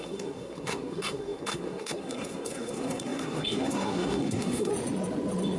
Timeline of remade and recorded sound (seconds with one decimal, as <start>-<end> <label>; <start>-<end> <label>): 0.0-4.7 remade; 4.7-5.6 recorded